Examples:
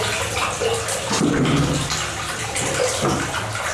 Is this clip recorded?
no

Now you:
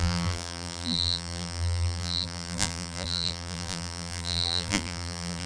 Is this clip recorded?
no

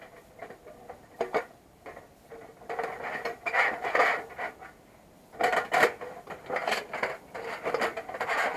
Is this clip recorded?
no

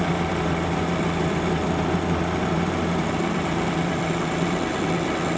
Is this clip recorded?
no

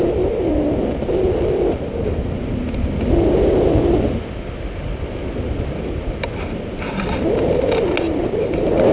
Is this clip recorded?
yes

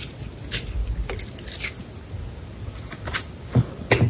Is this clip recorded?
yes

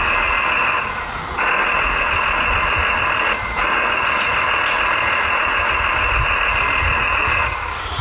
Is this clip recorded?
no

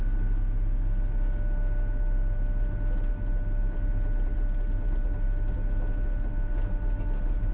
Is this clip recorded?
yes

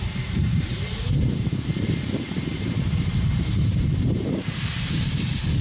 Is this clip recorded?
no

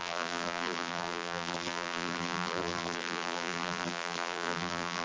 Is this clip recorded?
no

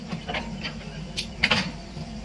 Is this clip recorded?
no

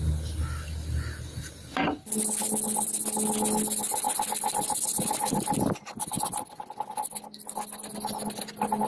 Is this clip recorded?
yes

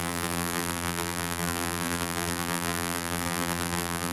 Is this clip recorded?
no